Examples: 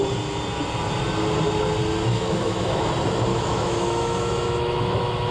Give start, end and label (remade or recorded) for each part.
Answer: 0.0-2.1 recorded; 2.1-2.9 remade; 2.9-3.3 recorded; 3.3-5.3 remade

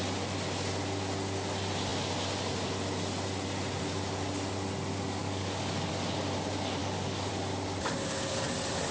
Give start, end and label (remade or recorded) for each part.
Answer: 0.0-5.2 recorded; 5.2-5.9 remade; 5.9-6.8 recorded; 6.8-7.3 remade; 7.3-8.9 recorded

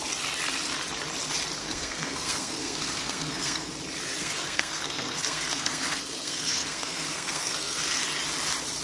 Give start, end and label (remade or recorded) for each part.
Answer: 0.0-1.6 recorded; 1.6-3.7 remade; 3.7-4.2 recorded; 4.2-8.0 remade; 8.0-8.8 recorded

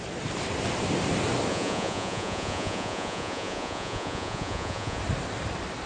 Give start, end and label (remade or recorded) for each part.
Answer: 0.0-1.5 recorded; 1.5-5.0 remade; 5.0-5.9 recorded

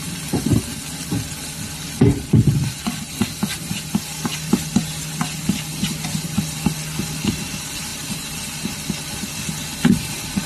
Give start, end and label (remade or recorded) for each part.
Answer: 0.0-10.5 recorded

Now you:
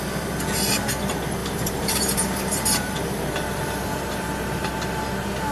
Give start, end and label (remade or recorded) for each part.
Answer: 0.0-1.4 recorded; 1.4-4.7 remade; 4.7-5.5 recorded